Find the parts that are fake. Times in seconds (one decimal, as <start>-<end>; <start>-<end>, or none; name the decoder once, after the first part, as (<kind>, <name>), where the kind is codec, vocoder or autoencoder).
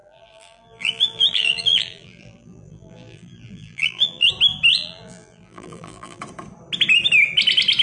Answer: 0.0-4.3 (vocoder, BigVGAN v2); 4.7-6.2